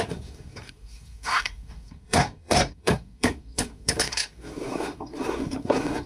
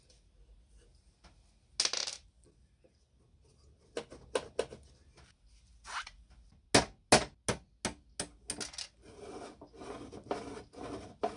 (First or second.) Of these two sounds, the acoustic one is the second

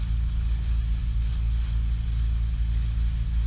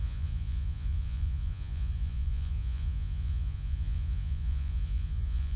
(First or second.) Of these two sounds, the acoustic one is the first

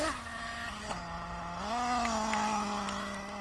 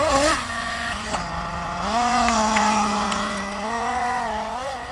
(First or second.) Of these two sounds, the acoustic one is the first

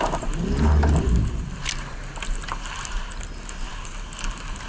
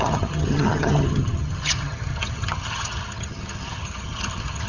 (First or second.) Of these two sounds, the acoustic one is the first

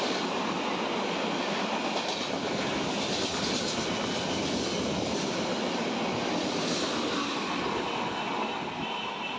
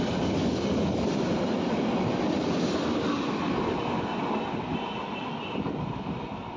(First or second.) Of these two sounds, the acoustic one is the first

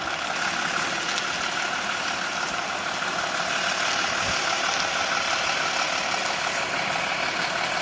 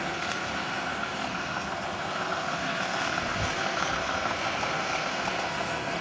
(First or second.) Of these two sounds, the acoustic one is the first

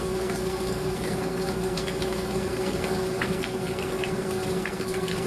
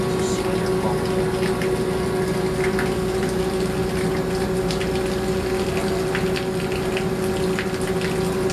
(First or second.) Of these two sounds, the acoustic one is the second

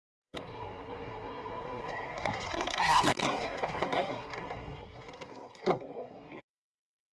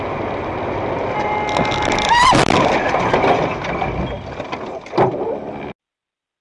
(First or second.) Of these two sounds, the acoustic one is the second